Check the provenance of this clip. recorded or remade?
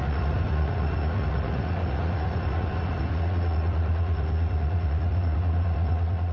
remade